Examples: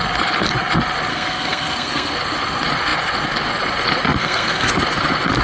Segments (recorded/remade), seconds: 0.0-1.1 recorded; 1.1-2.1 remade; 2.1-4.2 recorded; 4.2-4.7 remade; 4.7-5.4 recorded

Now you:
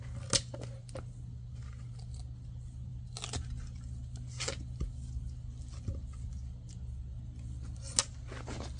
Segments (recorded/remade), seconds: 0.0-8.8 recorded

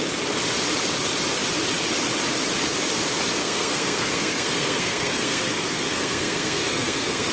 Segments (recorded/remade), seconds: 0.0-3.4 recorded; 3.4-7.3 remade

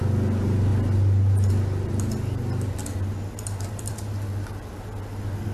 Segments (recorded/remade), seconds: 0.0-5.5 recorded

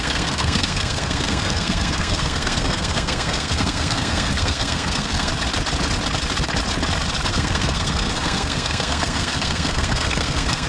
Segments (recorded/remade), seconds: 0.0-5.3 remade; 5.3-7.3 recorded; 7.3-10.7 remade